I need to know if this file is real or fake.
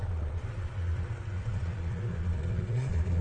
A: fake